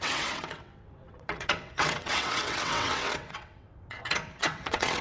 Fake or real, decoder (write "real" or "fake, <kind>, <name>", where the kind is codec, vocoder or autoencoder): fake, vocoder, WaveNeXt